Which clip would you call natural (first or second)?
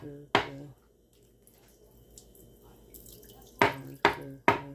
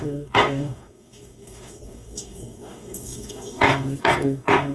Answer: first